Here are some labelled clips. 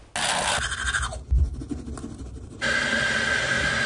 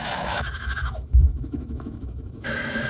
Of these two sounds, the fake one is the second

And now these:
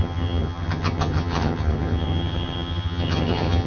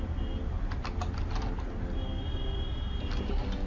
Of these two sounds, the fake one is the first